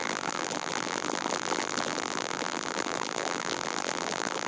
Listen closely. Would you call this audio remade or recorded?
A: remade